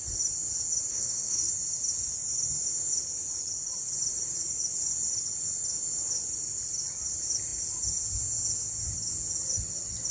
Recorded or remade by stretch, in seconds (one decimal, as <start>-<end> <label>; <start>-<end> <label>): 0.0-0.9 recorded; 0.9-1.5 remade; 1.5-10.1 recorded